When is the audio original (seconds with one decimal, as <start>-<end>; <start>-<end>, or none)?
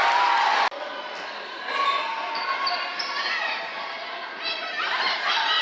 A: 0.0-5.6